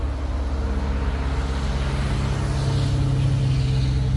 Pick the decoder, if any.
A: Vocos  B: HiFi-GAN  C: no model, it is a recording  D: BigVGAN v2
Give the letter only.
C